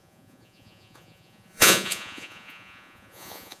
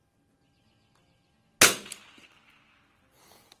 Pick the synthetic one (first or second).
first